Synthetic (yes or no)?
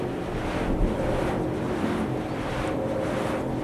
no